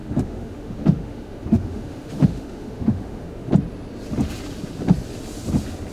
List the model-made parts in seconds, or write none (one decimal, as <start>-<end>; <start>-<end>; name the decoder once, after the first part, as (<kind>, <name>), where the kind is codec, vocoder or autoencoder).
0.0-3.5 (autoencoder, DAC-VAE)